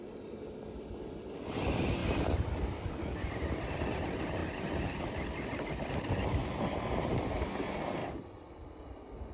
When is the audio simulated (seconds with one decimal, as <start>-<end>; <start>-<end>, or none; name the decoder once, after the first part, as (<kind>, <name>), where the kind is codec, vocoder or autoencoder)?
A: 2.0-3.8 (vocoder, BigVGAN v2); 4.4-7.3; 8.0-8.8